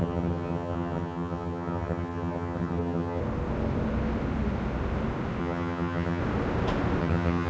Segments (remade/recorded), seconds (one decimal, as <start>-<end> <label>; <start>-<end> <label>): 0.0-3.2 remade; 3.2-5.4 recorded; 5.4-6.2 remade; 6.2-7.0 recorded; 7.0-7.5 remade